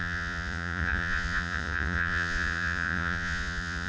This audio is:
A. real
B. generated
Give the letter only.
B